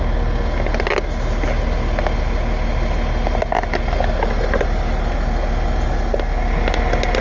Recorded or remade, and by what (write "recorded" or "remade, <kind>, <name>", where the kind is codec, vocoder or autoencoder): recorded